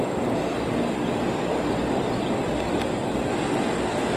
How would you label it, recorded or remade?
recorded